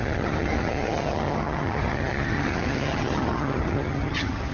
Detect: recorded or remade remade